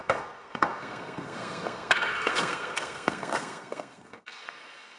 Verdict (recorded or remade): remade